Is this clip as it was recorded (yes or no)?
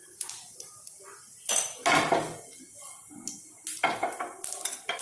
yes